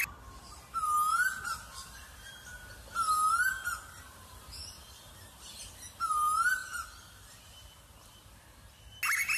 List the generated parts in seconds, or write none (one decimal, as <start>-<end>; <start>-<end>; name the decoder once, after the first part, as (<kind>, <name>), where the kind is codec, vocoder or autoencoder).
none